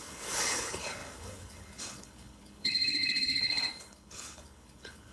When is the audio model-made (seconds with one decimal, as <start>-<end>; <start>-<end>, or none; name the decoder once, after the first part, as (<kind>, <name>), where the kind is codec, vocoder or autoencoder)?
0.0-5.1 (codec, HILCodec)